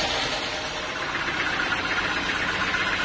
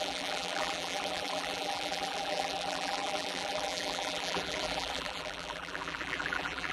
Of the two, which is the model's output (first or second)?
second